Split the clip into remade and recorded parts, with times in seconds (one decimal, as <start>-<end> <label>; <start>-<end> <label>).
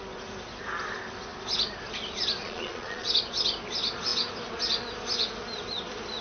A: 0.0-2.4 recorded; 2.4-3.1 remade; 3.1-6.2 recorded